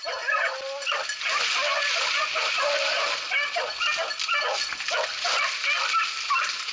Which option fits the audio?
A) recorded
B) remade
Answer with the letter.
A